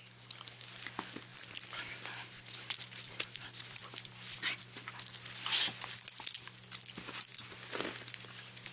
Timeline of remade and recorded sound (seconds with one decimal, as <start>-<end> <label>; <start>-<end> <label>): 0.0-1.3 recorded; 1.3-4.6 remade; 4.6-7.3 recorded; 7.3-8.7 remade